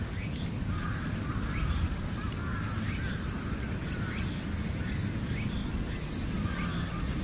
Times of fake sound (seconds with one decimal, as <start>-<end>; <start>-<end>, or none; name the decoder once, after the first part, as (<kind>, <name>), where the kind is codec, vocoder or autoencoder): none

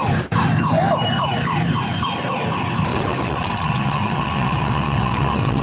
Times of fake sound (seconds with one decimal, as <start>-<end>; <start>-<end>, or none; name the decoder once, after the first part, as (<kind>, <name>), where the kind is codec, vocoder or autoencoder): 2.9-5.6 (vocoder, WaveNeXt)

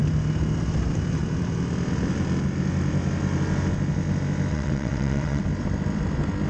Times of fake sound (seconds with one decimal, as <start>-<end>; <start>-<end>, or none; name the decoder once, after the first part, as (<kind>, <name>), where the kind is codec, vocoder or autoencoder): 4.5-5.4 (vocoder, WaveNeXt)

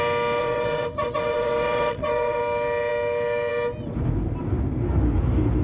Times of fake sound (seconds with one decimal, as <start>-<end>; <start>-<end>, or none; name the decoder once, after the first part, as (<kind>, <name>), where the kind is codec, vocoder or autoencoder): 0.4-2.4 (vocoder, WaveNeXt)

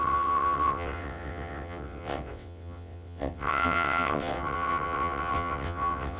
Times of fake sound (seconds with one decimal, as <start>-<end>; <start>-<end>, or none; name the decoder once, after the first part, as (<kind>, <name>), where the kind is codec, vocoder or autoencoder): 0.0-6.2 (vocoder, WaveNeXt)

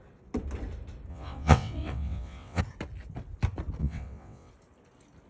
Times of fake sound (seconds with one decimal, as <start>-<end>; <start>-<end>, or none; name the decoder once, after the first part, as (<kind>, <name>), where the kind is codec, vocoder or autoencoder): 1.1-2.6 (vocoder, WaveNeXt); 3.8-4.5